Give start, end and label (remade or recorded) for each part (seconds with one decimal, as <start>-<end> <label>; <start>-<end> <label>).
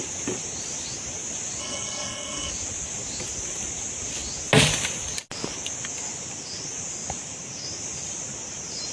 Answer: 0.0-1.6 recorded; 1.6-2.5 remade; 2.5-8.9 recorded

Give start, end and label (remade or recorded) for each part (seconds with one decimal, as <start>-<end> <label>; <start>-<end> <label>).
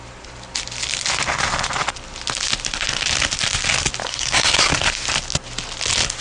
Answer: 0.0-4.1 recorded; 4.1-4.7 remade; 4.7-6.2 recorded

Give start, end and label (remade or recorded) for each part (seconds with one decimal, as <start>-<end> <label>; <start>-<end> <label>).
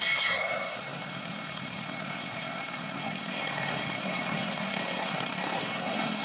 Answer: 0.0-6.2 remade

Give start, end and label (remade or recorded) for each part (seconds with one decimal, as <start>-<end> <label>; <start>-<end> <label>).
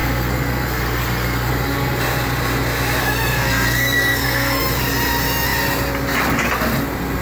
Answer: 0.0-1.5 remade; 1.5-3.0 recorded; 3.0-4.6 remade; 4.6-7.2 recorded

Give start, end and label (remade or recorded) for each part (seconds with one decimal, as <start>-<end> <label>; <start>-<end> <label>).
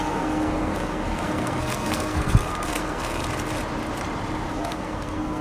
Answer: 0.0-3.2 remade; 3.2-4.5 recorded; 4.5-5.4 remade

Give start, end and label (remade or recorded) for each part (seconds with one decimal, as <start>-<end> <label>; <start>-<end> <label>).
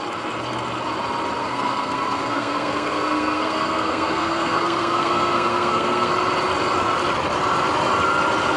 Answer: 0.0-1.4 recorded; 1.4-6.1 remade; 6.1-8.6 recorded